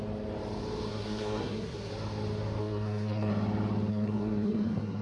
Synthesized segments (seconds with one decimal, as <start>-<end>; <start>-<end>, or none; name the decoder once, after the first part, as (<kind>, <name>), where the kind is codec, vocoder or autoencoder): 0.9-1.9 (codec, SNAC); 2.6-3.3; 3.9-5.0